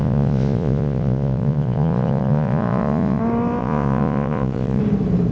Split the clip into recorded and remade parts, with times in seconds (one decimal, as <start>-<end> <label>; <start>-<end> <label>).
0.0-3.2 remade; 3.2-3.6 recorded; 3.6-4.8 remade; 4.8-5.3 recorded